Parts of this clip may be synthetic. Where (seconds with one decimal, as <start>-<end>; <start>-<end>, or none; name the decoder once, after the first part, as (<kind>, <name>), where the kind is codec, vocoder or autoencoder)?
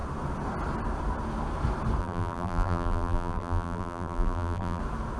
2.0-4.8 (vocoder, BigVGAN v2)